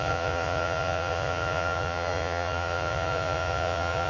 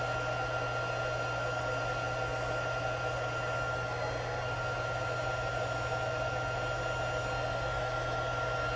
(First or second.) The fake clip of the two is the first